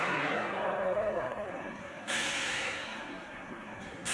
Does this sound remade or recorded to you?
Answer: remade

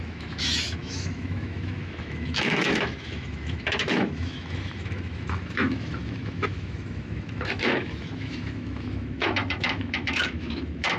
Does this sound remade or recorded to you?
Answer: remade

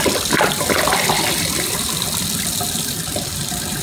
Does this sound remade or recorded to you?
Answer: remade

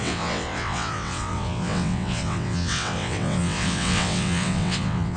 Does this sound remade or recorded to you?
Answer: remade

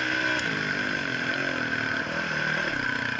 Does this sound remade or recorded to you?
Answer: recorded